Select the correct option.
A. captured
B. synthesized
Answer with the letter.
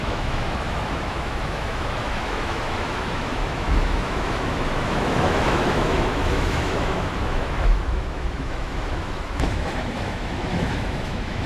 B